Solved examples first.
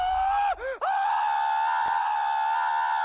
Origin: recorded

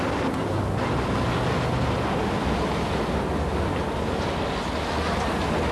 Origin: recorded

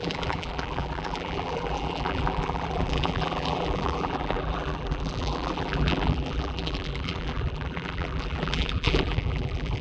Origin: remade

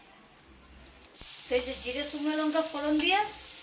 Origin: recorded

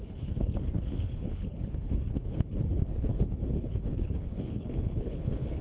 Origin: remade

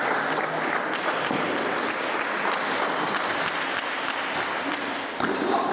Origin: recorded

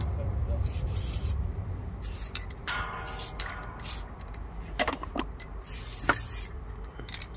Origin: recorded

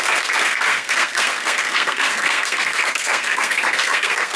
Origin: remade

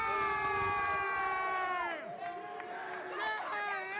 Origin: recorded